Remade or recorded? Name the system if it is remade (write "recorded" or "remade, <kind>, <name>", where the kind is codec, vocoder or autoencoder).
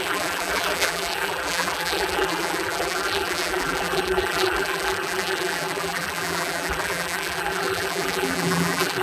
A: remade, vocoder, BigVGAN v2